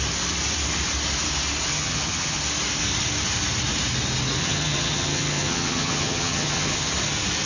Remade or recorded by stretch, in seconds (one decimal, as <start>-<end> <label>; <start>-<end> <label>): 0.0-1.7 recorded; 1.7-2.4 remade; 2.4-4.4 recorded; 4.4-6.9 remade; 6.9-7.5 recorded